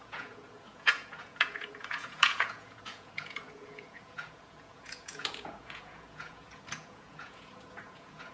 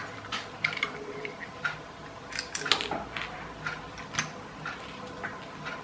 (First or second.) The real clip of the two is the second